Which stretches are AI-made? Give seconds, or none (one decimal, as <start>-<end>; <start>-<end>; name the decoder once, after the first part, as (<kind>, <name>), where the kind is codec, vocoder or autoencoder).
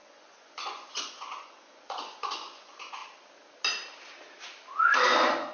0.0-3.0 (vocoder, Vocos); 5.1-5.5